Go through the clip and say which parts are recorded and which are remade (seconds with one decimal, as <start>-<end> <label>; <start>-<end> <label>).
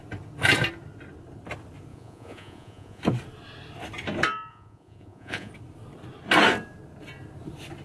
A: 0.0-1.9 recorded; 1.9-3.0 remade; 3.0-4.5 recorded; 4.5-5.5 remade; 5.5-7.8 recorded